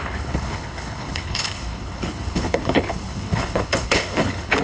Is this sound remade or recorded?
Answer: remade